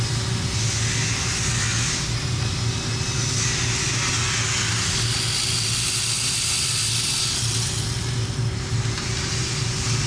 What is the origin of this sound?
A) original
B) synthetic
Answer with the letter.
A